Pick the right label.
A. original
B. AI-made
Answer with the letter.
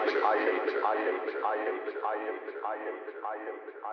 B